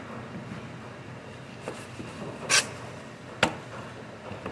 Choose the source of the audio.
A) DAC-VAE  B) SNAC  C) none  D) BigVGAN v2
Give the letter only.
C